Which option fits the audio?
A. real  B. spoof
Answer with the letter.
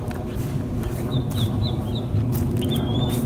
B